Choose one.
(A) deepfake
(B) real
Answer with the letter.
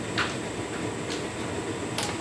B